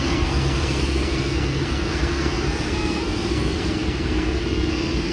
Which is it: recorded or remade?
remade